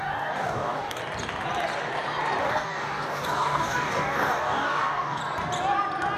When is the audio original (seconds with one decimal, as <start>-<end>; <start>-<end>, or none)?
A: 1.0-2.4; 5.2-6.2